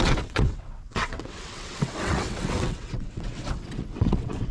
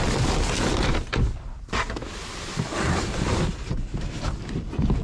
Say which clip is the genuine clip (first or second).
second